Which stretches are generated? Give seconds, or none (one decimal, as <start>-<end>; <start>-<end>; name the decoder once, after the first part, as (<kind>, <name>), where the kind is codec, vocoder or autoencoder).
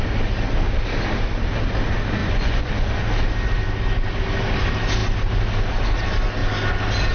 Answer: 2.2-2.7 (vocoder, Vocos)